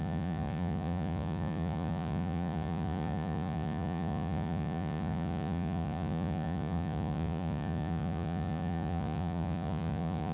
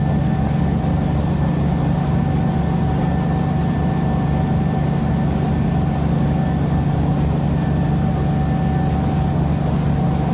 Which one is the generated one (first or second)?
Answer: first